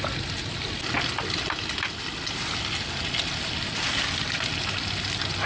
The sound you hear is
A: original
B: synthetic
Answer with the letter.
A